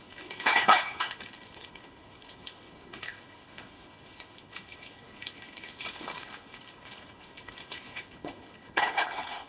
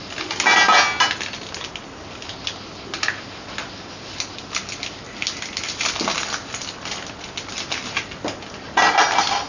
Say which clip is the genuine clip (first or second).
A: second